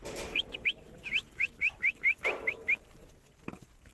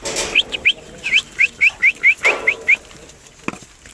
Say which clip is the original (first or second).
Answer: second